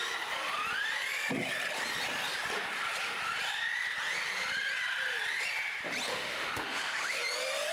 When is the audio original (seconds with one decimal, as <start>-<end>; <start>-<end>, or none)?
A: 0.0-6.1; 7.2-7.7